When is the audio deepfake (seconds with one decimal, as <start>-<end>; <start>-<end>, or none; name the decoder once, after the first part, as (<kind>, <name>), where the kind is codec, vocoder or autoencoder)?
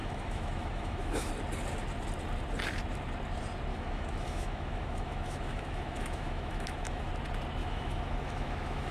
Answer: 0.0-1.3 (autoencoder, DAC-VAE); 3.7-7.1; 7.6-8.9